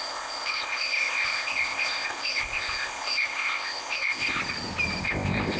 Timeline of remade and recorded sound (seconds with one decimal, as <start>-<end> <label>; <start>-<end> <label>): 0.0-4.4 remade; 4.4-5.0 recorded; 5.0-5.6 remade